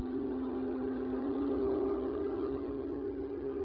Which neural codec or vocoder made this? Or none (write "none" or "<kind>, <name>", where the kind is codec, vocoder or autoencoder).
vocoder, HiFi-GAN